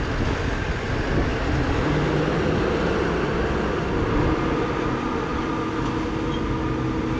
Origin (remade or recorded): recorded